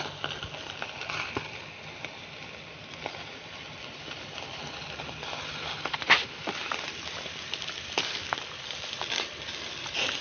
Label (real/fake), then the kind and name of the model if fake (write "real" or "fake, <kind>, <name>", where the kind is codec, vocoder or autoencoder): fake, vocoder, BigVGAN v2